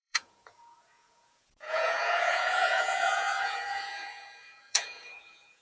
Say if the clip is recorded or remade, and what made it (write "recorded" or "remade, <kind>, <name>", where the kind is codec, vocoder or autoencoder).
remade, vocoder, Vocos